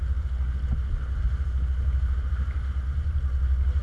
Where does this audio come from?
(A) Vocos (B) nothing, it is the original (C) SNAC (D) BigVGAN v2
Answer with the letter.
B